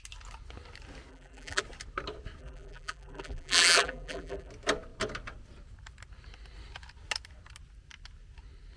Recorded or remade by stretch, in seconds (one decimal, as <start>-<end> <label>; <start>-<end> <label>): 0.0-1.1 recorded; 1.1-1.6 remade; 1.6-2.4 recorded; 2.4-4.5 remade; 4.5-8.8 recorded